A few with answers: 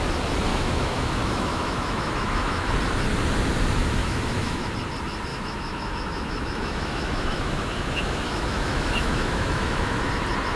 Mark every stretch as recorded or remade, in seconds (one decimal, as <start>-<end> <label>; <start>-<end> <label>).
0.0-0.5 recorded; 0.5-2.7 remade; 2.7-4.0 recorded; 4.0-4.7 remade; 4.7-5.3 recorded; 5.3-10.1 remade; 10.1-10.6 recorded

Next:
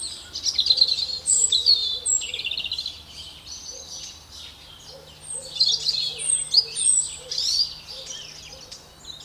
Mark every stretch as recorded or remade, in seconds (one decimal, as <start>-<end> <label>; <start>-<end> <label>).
0.0-9.2 recorded

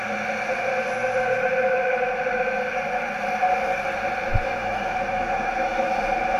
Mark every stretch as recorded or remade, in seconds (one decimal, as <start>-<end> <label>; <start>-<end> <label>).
0.0-4.3 recorded; 4.3-6.0 remade; 6.0-6.4 recorded